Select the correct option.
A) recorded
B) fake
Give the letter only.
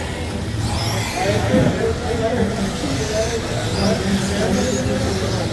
A